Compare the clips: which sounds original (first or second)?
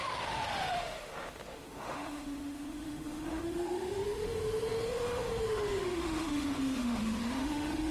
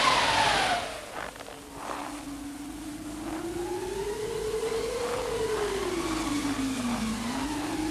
second